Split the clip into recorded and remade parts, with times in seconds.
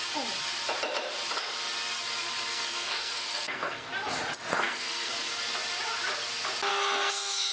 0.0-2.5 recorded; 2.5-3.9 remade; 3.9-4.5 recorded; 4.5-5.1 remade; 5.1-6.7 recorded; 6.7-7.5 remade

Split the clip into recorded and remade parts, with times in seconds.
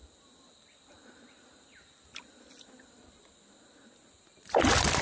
0.0-5.0 recorded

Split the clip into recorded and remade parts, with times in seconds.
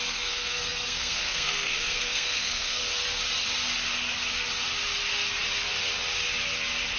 0.0-2.8 remade; 2.8-7.0 recorded